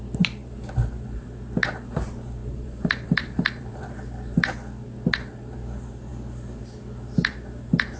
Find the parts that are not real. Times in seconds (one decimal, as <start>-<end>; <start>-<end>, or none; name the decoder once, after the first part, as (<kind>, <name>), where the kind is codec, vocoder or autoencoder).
2.4-3.9 (vocoder, BigVGAN v2)